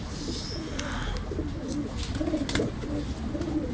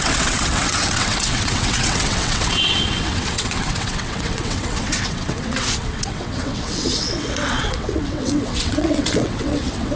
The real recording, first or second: first